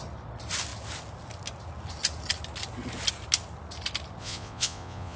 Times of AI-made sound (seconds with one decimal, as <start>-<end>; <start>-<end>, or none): 4.2-5.2